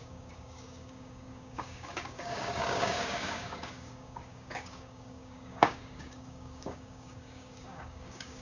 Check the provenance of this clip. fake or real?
fake